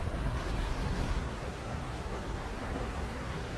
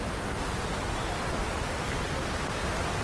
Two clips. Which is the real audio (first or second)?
second